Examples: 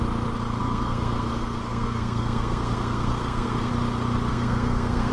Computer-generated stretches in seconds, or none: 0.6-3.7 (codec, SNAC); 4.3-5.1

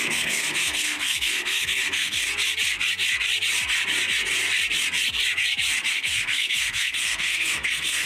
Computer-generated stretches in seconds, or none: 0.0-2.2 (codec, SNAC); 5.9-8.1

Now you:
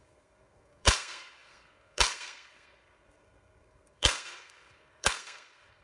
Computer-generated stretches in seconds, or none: 0.0-5.8 (codec, SNAC)